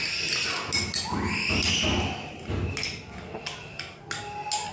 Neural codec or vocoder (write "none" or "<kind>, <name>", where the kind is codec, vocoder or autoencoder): none